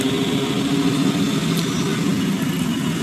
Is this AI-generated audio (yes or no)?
no